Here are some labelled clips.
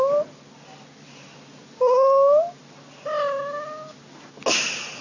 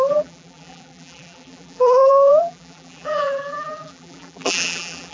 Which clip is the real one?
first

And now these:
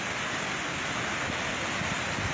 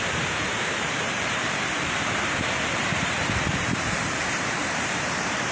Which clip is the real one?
first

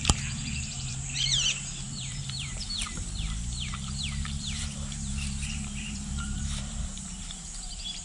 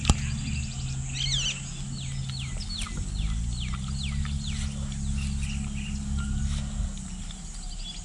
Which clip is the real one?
second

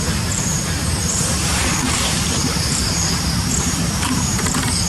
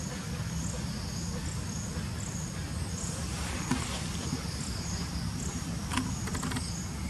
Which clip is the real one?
second